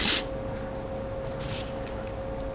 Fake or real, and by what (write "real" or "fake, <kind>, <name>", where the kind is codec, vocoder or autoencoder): real